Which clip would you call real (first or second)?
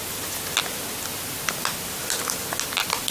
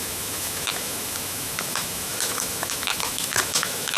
first